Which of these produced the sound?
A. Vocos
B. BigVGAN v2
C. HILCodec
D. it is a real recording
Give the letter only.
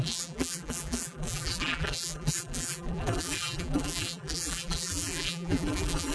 B